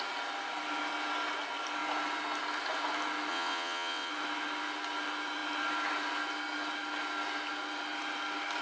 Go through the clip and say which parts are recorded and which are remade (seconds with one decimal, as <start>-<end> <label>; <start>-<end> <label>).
0.0-3.3 recorded; 3.3-4.1 remade; 4.1-8.6 recorded